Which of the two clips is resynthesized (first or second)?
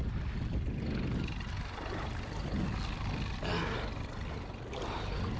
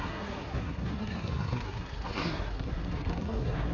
second